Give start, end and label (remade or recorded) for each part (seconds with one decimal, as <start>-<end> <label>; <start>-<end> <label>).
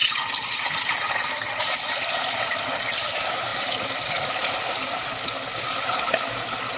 0.0-3.5 recorded; 3.5-5.1 remade; 5.1-6.8 recorded